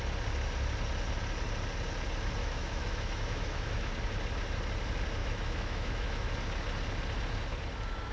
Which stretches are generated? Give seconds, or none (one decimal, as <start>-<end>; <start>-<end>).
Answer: 2.4-3.9; 5.2-6.3